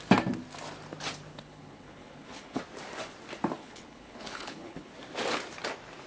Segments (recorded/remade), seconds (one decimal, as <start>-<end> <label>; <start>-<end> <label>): 0.0-1.3 recorded; 1.3-2.6 remade; 2.6-3.6 recorded; 3.6-4.9 remade; 4.9-6.1 recorded